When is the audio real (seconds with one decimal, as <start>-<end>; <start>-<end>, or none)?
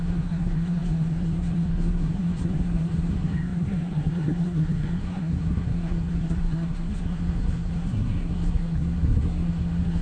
none